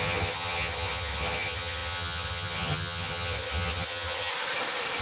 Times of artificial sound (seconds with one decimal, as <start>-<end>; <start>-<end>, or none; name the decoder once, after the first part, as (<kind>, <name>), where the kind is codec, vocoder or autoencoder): 0.0-4.3 (vocoder, HiFi-GAN)